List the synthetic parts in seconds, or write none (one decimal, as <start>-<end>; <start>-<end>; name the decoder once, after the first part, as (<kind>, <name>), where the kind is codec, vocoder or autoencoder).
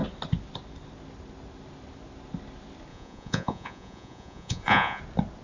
2.9-5.0 (vocoder, Vocos)